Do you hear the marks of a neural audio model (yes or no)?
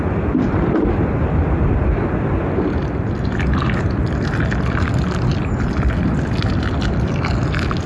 no